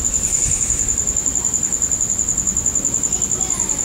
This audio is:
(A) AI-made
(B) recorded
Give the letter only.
B